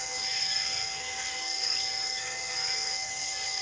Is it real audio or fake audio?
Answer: fake